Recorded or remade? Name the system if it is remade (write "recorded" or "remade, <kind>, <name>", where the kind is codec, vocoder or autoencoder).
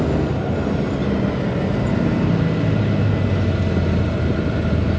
recorded